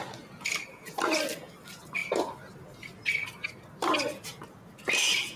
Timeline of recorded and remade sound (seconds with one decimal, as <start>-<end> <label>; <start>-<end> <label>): 0.0-5.4 recorded